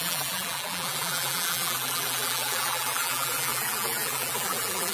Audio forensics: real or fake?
fake